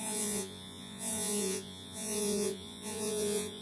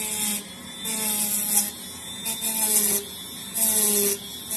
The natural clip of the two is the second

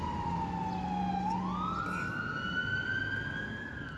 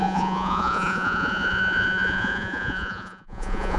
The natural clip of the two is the first